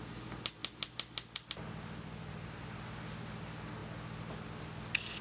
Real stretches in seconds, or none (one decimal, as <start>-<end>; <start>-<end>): 0.0-5.2